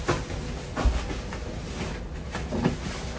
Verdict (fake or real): real